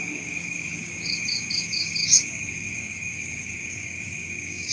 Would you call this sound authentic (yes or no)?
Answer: no